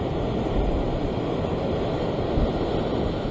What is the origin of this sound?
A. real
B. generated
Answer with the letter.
A